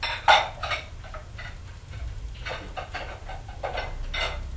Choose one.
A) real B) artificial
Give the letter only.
A